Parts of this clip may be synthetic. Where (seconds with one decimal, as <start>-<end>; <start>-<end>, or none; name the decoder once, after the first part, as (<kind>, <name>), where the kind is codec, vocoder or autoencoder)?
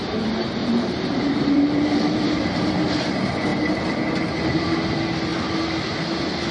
0.6-2.7 (vocoder, BigVGAN v2)